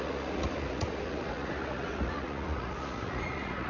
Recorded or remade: remade